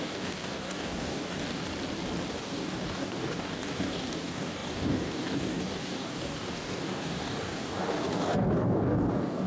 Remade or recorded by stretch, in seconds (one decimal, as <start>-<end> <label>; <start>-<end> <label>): 0.0-1.6 remade; 1.6-2.3 recorded; 2.3-9.5 remade

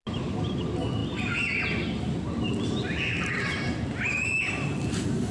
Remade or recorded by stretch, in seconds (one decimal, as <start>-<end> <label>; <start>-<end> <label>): 0.0-5.3 recorded

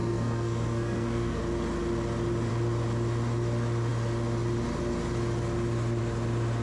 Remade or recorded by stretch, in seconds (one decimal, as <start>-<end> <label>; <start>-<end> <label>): 0.0-1.4 remade; 1.4-6.6 recorded